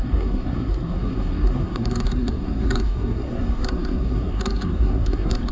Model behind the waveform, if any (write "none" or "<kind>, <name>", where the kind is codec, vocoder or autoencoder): codec, SNAC